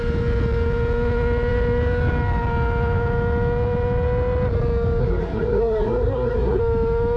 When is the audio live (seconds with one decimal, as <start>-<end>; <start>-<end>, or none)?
0.0-5.0; 6.6-7.2